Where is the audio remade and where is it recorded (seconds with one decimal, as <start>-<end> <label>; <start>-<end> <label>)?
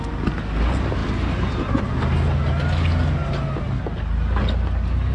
0.0-5.1 recorded